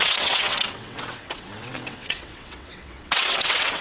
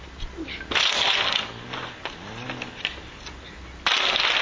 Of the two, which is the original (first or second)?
second